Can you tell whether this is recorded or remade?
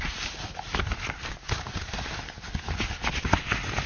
recorded